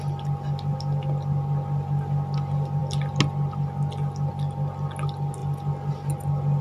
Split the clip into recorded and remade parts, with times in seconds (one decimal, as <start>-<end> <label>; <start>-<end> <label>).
0.0-6.6 recorded

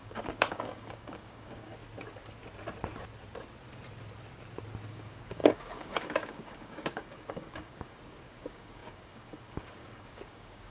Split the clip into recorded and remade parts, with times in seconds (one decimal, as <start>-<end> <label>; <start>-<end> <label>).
0.0-1.7 remade; 1.7-4.9 recorded; 4.9-10.7 remade

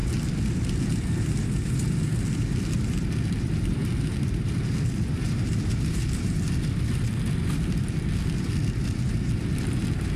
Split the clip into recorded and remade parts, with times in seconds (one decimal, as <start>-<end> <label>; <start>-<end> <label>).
0.0-10.2 remade